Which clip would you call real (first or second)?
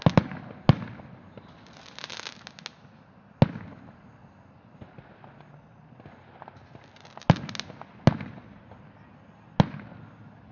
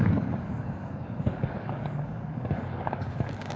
first